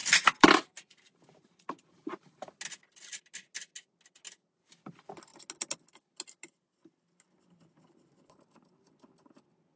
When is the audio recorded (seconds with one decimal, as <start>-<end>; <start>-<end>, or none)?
2.5-9.8